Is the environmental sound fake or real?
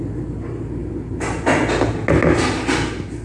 real